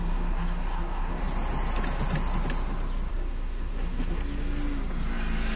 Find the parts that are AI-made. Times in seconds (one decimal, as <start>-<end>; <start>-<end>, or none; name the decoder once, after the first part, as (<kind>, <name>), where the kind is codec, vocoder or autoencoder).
0.0-1.2 (codec, SNAC); 3.1-4.2